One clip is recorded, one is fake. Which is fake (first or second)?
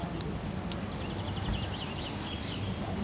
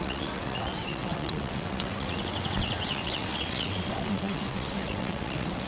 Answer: second